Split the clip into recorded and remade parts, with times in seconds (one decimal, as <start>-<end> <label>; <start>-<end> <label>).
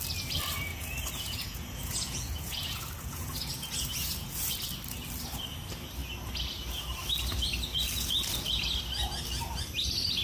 0.0-0.7 recorded; 0.7-4.5 remade; 4.5-10.2 recorded